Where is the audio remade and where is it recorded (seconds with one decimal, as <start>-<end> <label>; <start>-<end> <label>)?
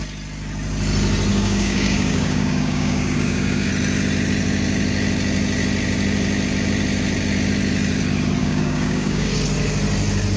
0.0-1.3 recorded; 1.3-3.7 remade; 3.7-8.4 recorded; 8.4-9.3 remade; 9.3-10.4 recorded